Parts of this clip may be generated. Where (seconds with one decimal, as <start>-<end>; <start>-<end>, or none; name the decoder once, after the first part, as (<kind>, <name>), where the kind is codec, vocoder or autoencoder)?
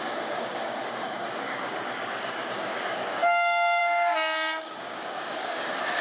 0.0-6.0 (codec, DAC)